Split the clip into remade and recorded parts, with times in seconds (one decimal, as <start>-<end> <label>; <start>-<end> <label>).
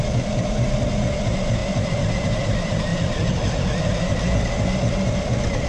0.0-2.9 remade; 2.9-3.9 recorded; 3.9-5.7 remade